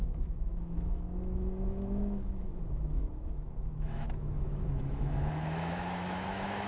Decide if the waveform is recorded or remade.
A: remade